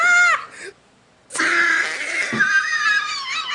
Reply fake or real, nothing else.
real